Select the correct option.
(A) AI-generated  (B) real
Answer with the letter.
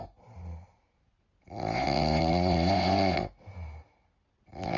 B